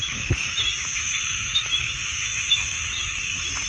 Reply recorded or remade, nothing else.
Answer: remade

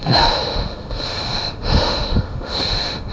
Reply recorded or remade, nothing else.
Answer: remade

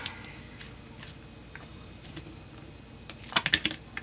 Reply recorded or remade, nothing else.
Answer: recorded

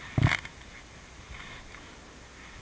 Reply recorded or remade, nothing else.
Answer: recorded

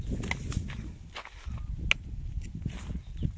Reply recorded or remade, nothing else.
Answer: recorded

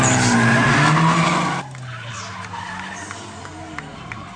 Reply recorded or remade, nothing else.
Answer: recorded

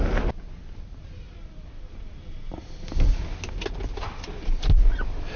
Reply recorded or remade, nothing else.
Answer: recorded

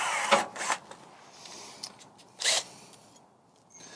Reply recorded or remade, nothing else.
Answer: recorded